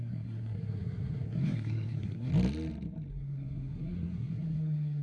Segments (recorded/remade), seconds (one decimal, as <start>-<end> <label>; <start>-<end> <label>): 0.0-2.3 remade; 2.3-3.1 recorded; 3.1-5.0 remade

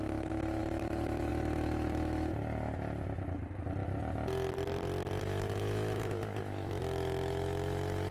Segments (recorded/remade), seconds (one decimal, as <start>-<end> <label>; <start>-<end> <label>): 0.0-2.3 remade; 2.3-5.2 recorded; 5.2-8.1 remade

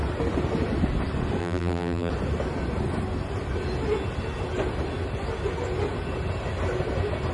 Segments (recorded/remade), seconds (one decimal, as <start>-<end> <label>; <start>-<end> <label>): 0.0-1.4 recorded; 1.4-2.1 remade; 2.1-7.3 recorded